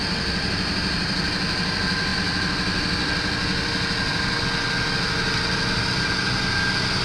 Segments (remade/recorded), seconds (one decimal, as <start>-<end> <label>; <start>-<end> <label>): 0.0-7.0 recorded